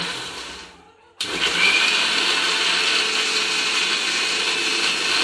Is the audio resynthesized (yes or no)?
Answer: no